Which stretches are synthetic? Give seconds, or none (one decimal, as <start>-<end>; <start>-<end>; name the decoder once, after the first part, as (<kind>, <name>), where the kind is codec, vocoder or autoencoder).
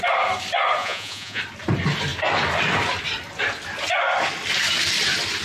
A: 0.8-1.4 (vocoder, Vocos)